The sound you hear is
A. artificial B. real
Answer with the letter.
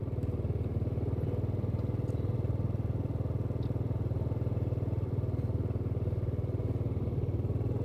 B